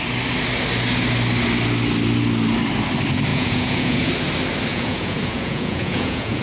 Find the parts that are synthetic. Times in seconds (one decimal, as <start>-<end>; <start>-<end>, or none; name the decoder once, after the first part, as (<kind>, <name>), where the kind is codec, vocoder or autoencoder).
3.3-4.1 (vocoder, Vocos); 4.7-6.4